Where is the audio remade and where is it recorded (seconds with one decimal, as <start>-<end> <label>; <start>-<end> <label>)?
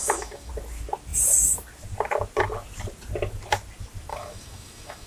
0.0-0.5 remade; 0.5-4.1 recorded; 4.1-5.1 remade